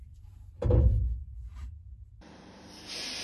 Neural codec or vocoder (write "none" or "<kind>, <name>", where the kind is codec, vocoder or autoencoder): vocoder, BigVGAN v2